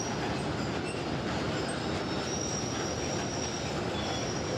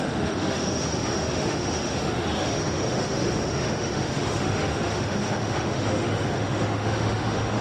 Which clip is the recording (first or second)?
first